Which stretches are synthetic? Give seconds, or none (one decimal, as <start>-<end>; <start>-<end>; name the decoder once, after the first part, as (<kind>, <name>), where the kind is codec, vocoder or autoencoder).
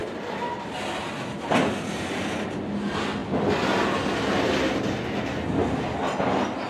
none